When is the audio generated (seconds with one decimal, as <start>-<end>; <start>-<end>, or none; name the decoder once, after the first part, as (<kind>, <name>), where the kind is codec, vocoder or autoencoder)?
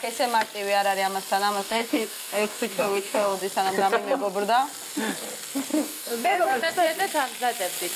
1.6-3.4 (codec, DAC); 5.7-6.7